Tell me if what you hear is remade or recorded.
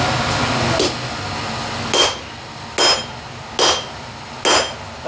recorded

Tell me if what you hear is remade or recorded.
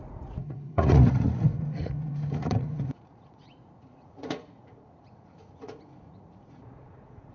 remade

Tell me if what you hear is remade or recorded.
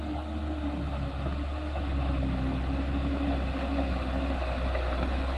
recorded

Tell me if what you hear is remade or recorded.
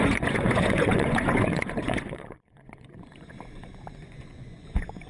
remade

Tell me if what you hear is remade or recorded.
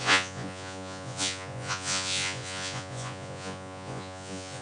remade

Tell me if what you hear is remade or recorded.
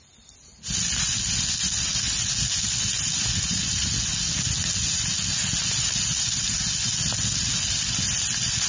recorded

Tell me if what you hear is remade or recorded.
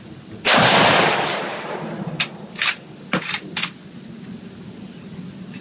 recorded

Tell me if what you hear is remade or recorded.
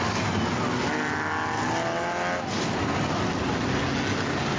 recorded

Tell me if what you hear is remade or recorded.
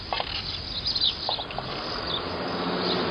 recorded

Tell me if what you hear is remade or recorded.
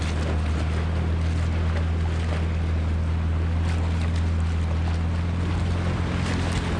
recorded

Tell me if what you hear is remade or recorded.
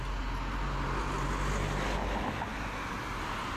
recorded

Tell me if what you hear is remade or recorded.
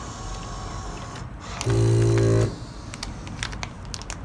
recorded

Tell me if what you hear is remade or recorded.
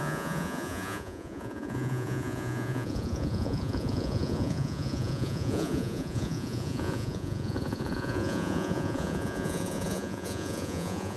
remade